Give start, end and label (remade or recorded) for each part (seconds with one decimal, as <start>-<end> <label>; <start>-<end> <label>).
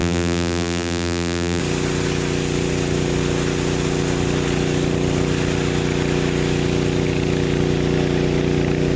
0.0-1.6 remade; 1.6-9.0 recorded